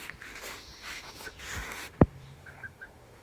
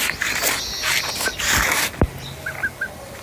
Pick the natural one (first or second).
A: second